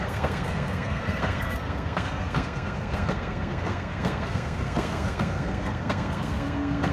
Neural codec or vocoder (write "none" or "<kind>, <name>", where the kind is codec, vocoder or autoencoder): codec, SNAC